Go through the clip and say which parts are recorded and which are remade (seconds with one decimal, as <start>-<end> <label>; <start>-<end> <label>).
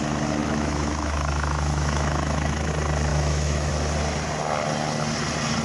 0.0-0.4 recorded; 0.4-2.7 remade; 2.7-3.1 recorded; 3.1-3.7 remade; 3.7-5.6 recorded